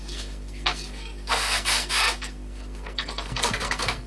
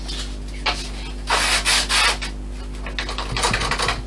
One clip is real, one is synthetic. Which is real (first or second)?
second